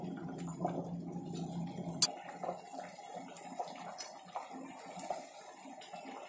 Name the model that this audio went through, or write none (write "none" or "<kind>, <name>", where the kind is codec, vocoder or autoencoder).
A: none